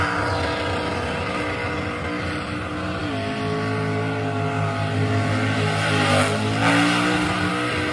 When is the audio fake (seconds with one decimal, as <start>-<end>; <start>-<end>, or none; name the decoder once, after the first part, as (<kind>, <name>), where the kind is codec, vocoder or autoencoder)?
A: none